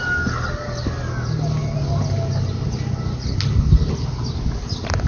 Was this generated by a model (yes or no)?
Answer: no